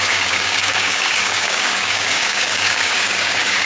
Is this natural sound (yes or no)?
no